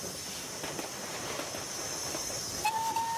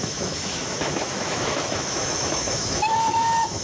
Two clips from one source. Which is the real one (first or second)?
first